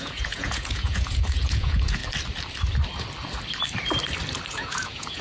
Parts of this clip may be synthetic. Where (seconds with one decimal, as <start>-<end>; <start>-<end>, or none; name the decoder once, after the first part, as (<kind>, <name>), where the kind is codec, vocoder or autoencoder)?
0.0-2.0 (vocoder, Vocos); 4.5-5.2

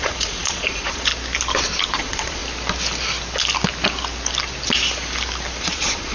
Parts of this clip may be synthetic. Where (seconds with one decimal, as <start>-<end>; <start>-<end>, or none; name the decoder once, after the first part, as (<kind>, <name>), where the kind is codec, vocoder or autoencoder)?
0.0-1.1 (vocoder, Vocos); 1.9-2.4; 5.6-6.1

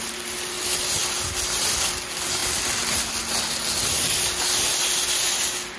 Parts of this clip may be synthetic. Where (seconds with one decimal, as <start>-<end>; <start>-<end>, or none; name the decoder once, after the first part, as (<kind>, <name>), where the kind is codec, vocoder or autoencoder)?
none

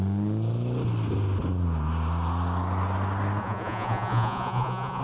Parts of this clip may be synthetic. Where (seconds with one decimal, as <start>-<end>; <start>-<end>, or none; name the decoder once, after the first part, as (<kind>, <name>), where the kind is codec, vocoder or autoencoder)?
3.4-5.0 (vocoder, Vocos)

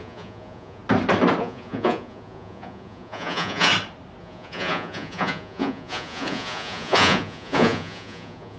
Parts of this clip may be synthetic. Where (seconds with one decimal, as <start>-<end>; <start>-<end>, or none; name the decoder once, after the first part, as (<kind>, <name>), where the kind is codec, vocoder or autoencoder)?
0.0-0.8 (vocoder, Vocos); 1.4-3.7; 4.2-8.6